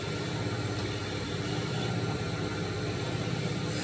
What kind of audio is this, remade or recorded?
remade